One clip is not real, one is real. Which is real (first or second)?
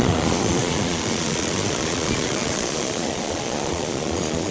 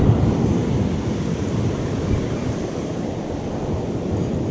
second